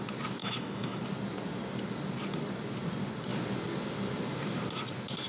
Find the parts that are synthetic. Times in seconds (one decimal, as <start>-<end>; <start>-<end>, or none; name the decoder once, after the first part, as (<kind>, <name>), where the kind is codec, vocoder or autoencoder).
0.4-1.0 (autoencoder, DAC-VAE)

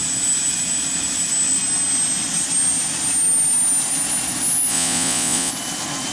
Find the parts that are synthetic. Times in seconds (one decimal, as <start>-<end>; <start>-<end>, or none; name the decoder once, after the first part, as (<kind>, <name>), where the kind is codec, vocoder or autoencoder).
4.7-5.5 (vocoder, Vocos)

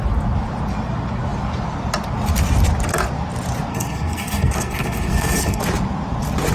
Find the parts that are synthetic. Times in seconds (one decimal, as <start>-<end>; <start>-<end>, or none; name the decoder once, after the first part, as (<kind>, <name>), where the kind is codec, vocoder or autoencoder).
3.7-5.6 (codec, SNAC)

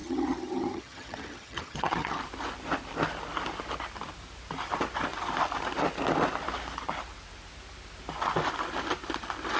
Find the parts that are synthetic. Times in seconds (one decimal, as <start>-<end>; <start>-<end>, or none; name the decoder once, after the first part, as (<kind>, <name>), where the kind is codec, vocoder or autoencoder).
0.0-2.2 (vocoder, HiFi-GAN)

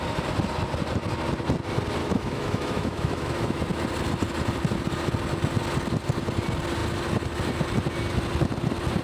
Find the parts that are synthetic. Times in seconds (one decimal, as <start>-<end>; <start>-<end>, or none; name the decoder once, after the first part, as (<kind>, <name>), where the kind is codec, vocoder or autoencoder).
2.0-3.6 (autoencoder, DAC-VAE)

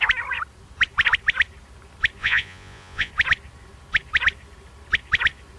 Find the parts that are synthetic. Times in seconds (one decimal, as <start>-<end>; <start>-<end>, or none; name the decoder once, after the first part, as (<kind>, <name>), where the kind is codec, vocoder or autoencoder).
2.2-3.1 (vocoder, Vocos)